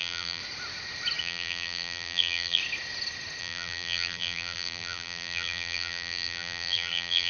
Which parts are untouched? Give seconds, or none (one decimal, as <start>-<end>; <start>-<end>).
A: 0.4-1.2; 2.6-3.4